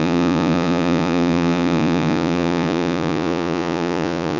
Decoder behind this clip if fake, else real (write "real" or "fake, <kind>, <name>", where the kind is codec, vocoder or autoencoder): fake, vocoder, Vocos